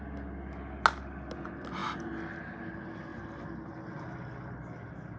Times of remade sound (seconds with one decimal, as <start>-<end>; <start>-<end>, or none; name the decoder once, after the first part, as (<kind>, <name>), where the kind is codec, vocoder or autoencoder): none